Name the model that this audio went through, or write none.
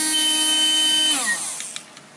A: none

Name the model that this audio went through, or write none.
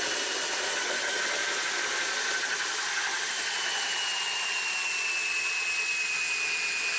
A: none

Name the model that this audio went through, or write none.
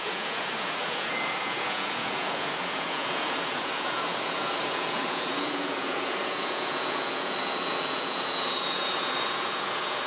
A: vocoder, Vocos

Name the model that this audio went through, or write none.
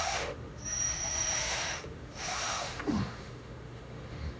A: autoencoder, DAC-VAE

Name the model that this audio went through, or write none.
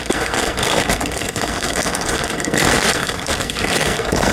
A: codec, SNAC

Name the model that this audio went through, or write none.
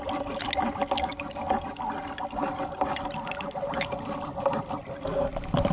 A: none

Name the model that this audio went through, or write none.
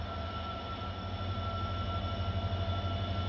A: none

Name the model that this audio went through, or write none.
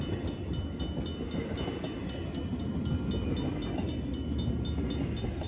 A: none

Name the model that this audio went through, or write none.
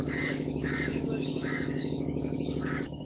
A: codec, DAC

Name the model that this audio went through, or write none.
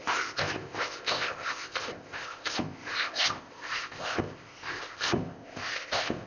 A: codec, ZipCodec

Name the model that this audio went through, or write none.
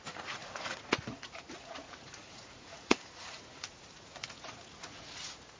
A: vocoder, Vocos